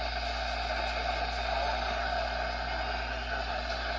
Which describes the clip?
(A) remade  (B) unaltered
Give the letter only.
B